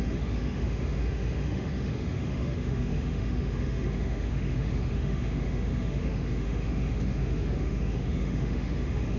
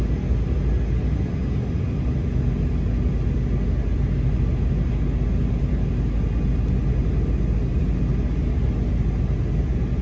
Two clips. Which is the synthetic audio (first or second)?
first